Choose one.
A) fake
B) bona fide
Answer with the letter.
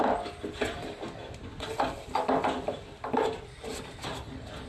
B